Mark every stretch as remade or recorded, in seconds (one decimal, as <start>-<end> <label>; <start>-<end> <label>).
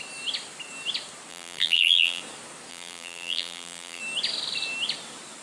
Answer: 0.0-1.3 recorded; 1.3-2.2 remade; 2.2-2.7 recorded; 2.7-4.0 remade; 4.0-5.4 recorded